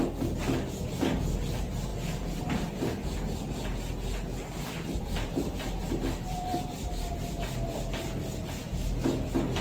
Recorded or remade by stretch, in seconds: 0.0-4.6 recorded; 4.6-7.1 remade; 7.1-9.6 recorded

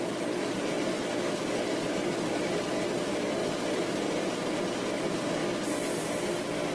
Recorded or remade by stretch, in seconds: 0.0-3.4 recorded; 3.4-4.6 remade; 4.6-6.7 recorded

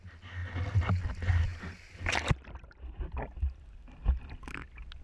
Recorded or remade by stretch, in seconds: 0.0-5.0 recorded

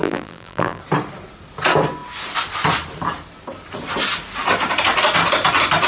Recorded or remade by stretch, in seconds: 0.0-0.8 remade; 0.8-5.9 recorded

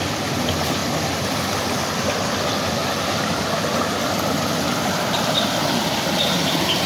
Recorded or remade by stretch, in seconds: 0.0-6.9 recorded

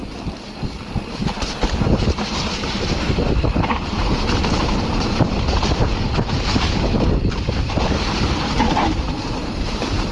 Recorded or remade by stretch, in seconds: 0.0-10.1 remade

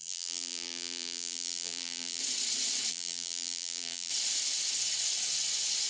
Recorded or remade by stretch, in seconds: 0.0-2.2 remade; 2.2-2.9 recorded; 2.9-4.1 remade; 4.1-5.9 recorded

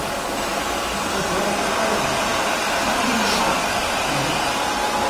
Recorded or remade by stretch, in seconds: 0.0-5.1 recorded